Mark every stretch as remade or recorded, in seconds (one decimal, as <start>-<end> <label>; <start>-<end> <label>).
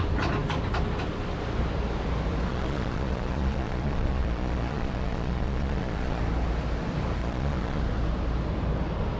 0.0-2.5 recorded; 2.5-6.2 remade; 6.2-7.2 recorded; 7.2-7.8 remade; 7.8-9.2 recorded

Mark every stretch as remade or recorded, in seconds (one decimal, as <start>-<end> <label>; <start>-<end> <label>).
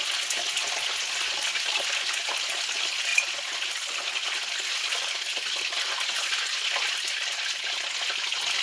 0.0-8.6 recorded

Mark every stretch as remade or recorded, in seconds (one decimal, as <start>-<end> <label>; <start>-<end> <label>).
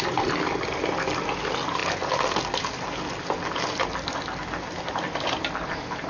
0.0-6.1 recorded